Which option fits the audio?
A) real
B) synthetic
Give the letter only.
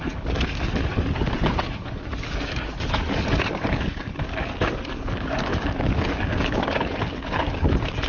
B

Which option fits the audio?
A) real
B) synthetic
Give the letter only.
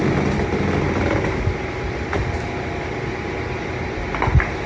A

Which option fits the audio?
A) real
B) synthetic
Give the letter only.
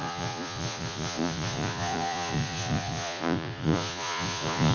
B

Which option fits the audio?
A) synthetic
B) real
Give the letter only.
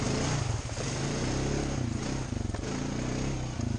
B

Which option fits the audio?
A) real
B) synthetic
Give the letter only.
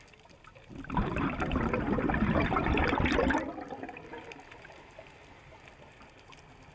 B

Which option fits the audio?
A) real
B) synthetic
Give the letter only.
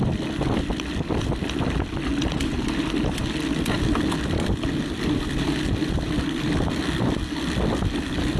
A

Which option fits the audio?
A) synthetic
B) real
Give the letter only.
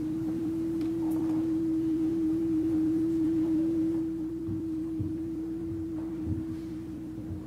A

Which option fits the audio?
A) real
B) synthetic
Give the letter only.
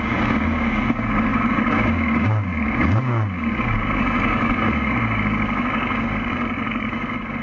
B